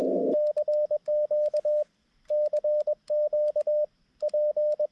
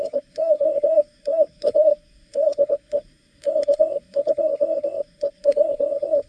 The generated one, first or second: second